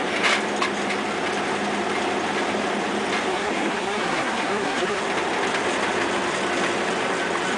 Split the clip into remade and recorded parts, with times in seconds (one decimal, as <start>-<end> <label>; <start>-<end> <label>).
0.0-3.3 recorded; 3.3-5.0 remade; 5.0-7.6 recorded